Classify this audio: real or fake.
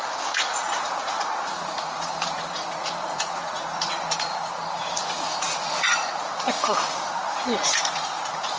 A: fake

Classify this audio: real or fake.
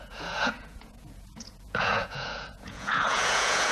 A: fake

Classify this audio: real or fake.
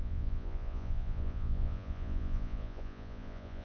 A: fake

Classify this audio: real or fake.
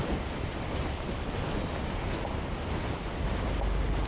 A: real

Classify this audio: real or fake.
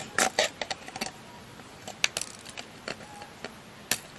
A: real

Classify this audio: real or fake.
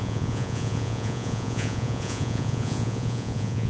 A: fake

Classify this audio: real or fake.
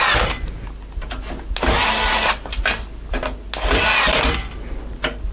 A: real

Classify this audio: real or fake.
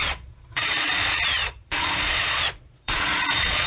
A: fake